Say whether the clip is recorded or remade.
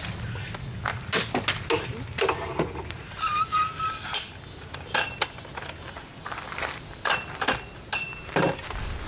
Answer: recorded